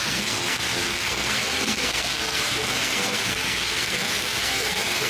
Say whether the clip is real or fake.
fake